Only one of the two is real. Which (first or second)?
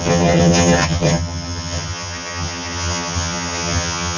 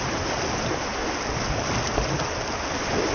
second